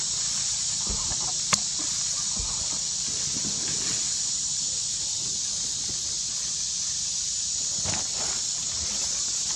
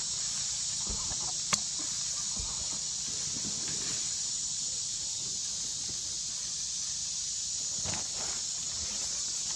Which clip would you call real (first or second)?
second